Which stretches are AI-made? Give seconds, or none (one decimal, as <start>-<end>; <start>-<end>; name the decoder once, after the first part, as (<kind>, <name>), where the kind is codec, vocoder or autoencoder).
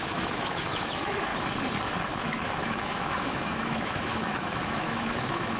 0.0-1.3 (autoencoder, DAC-VAE); 2.1-5.6